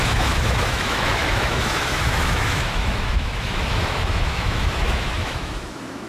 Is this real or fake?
fake